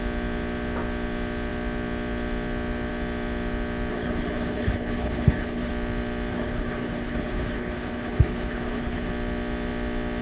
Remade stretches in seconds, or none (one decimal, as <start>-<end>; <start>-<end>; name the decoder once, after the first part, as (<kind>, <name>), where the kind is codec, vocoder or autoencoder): 3.9-5.7 (codec, HILCodec); 6.3-9.1